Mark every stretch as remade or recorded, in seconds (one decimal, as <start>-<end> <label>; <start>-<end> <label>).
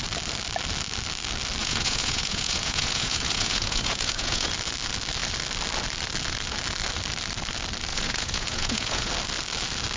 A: 0.0-1.6 recorded; 1.6-4.5 remade; 4.5-7.9 recorded; 7.9-9.1 remade; 9.1-10.0 recorded